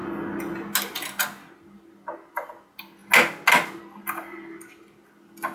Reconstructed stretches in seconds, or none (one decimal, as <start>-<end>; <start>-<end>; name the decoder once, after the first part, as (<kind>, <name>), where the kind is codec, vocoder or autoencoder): none